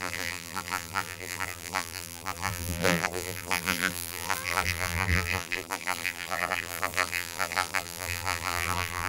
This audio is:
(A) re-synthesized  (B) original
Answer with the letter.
A